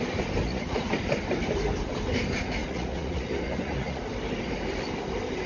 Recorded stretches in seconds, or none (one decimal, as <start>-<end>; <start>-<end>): 0.0-0.4; 0.9-2.6; 4.0-5.5